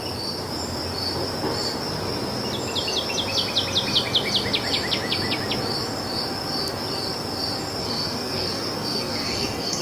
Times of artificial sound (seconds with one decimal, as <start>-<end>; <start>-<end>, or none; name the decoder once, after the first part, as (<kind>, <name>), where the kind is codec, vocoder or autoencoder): 7.8-9.8 (codec, SNAC)